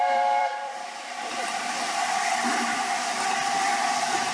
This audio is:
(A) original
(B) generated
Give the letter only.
B